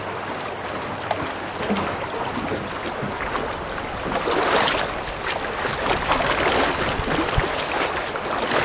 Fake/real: real